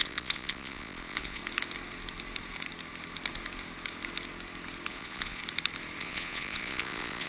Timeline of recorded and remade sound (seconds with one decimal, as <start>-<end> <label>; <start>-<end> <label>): 0.0-1.4 remade; 1.4-4.9 recorded; 4.9-5.4 remade; 5.4-6.0 recorded; 6.0-7.3 remade